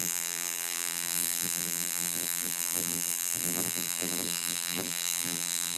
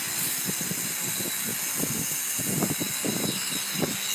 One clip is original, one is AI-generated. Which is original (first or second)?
second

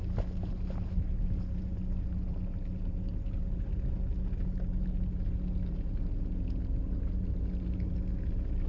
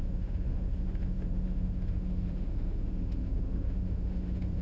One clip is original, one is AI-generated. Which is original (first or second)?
first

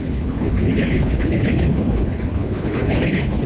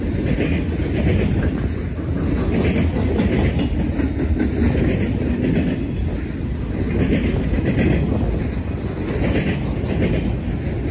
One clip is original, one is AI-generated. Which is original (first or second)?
second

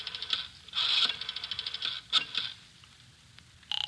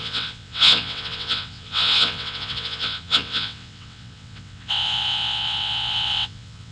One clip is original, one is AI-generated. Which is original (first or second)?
first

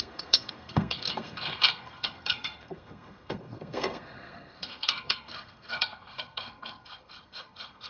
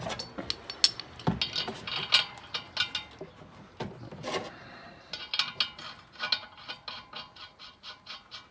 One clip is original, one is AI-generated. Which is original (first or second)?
second